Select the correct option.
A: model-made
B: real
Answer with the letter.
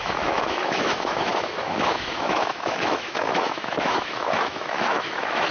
A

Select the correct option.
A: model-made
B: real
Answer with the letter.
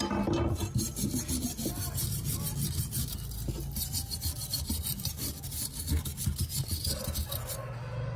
B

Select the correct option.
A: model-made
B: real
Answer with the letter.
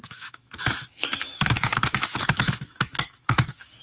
A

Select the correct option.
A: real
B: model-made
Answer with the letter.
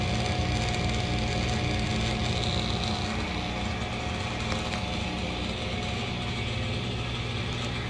A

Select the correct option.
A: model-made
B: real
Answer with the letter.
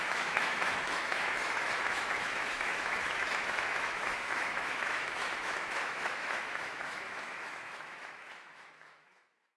A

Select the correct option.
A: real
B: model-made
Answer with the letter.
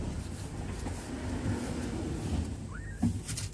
A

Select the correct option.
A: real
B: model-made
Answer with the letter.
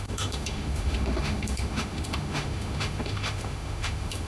B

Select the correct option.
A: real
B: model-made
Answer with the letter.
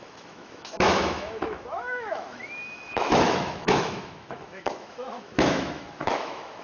B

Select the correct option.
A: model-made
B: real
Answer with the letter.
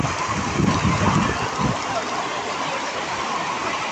B